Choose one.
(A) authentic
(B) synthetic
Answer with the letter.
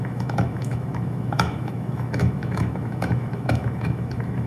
B